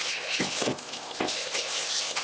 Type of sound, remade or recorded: remade